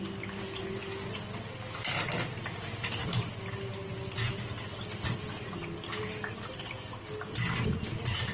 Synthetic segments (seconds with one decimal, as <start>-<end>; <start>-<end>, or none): none